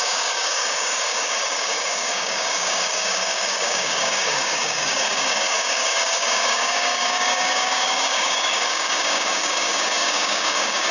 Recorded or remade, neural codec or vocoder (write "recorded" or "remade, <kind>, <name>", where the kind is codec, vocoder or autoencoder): remade, codec, DAC